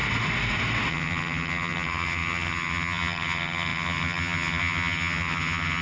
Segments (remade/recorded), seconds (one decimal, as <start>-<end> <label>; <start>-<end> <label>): 0.0-0.9 recorded; 0.9-5.8 remade